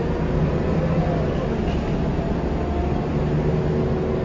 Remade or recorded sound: recorded